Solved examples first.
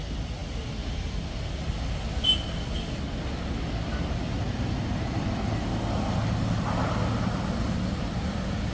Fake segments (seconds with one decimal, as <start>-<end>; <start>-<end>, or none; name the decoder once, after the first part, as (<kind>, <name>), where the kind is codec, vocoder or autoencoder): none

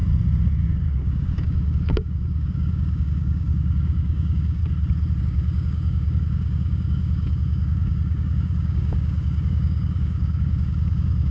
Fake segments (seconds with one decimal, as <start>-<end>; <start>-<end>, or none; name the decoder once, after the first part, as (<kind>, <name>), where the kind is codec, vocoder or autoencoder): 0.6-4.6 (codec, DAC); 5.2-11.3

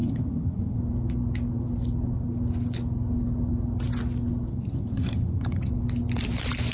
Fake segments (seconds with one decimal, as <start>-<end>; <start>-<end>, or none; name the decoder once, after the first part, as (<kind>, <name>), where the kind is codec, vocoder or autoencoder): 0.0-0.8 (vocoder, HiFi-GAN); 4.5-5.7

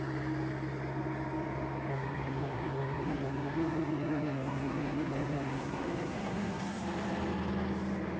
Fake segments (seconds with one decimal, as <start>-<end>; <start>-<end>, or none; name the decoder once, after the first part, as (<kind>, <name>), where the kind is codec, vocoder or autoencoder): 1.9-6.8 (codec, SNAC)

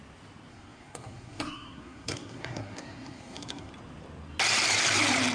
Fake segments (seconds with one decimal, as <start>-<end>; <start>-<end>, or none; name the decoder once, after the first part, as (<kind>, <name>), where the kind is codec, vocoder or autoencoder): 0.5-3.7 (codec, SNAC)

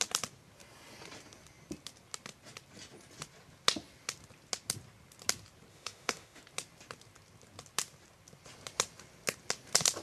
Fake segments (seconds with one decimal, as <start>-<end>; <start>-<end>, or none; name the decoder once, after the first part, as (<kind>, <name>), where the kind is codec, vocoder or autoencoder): 5.7-6.4 (autoencoder, DAC-VAE)

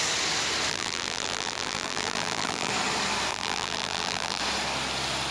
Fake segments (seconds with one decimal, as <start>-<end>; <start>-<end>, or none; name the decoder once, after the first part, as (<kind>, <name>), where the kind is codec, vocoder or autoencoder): 0.7-2.7 (vocoder, BigVGAN v2); 3.3-4.4